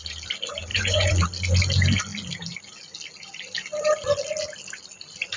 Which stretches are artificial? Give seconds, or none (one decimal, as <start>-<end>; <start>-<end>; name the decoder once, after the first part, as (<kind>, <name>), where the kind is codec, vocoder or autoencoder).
0.7-1.2 (vocoder, Vocos)